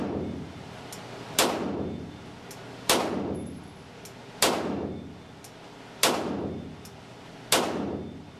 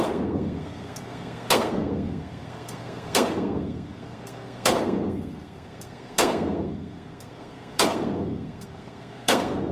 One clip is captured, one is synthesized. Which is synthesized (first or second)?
second